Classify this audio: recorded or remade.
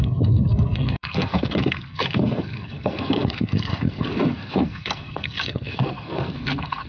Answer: remade